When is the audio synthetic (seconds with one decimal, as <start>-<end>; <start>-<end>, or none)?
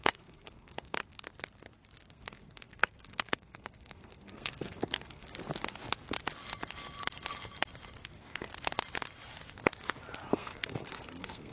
0.0-1.0; 2.1-5.2; 8.0-8.5; 10.3-11.5